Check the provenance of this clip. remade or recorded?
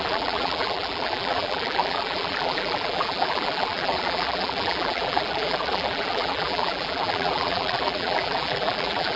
remade